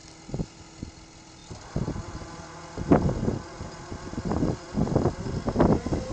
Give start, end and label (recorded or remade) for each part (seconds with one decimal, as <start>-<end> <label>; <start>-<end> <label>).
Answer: 0.0-6.1 recorded